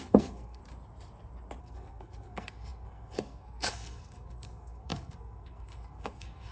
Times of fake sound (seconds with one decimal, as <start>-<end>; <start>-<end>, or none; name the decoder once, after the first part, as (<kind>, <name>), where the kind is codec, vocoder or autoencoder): 0.0-0.6 (codec, SNAC); 1.6-6.5